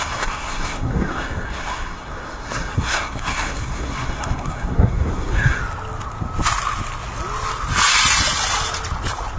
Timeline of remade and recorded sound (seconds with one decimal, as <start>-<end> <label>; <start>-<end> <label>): 0.0-5.6 remade; 5.6-9.4 recorded